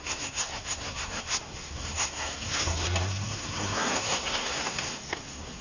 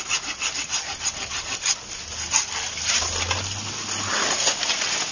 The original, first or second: second